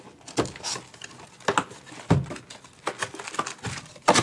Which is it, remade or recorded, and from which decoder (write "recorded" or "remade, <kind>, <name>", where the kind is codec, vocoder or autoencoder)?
recorded